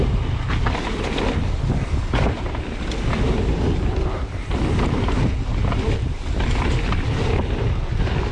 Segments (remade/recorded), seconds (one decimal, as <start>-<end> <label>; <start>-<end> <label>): 0.0-8.3 recorded